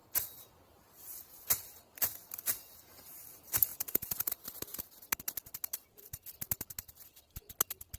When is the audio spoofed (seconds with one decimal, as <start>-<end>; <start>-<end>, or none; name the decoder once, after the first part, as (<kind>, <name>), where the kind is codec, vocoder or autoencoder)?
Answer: 3.7-4.3 (vocoder, Vocos)